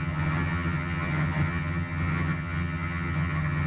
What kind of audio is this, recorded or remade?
remade